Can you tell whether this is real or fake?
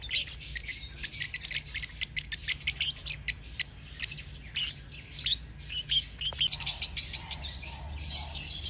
real